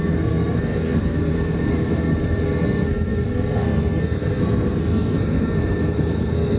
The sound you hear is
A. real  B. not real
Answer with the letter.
B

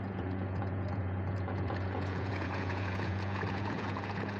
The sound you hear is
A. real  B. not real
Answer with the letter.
B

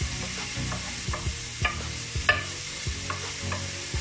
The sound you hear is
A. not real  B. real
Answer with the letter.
B